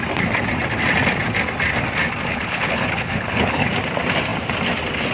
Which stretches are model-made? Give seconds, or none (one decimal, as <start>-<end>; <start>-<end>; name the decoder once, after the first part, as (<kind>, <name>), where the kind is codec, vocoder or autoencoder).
2.3-3.7 (codec, HILCodec)

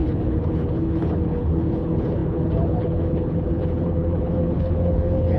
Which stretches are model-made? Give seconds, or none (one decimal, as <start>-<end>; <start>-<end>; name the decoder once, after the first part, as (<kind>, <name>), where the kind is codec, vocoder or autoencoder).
0.0-5.4 (codec, HILCodec)

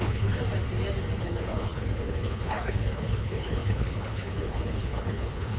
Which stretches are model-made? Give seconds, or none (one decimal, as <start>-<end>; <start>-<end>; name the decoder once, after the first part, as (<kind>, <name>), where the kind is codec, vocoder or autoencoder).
0.0-0.4 (codec, HILCodec); 1.2-5.6

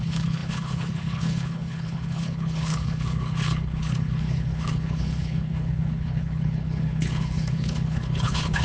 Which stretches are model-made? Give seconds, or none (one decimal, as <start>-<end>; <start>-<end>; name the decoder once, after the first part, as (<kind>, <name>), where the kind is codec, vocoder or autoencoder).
0.0-8.6 (codec, HILCodec)

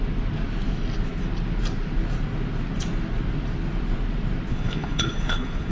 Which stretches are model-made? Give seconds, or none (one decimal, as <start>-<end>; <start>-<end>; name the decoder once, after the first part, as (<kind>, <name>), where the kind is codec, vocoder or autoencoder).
4.5-5.7 (codec, HILCodec)

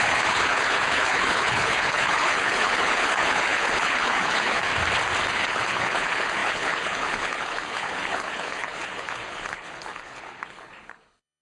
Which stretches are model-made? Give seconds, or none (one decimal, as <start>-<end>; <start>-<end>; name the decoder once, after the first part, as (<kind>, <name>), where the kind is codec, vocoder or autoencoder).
0.0-4.7 (codec, HILCodec); 5.3-11.4

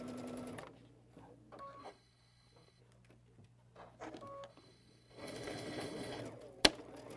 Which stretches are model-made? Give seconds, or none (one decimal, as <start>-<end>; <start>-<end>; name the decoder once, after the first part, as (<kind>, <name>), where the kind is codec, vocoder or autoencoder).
1.8-2.8 (codec, HILCodec); 4.5-6.2